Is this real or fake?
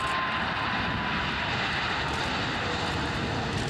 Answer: real